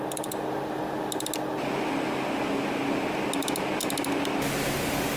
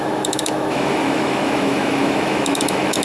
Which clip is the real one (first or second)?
first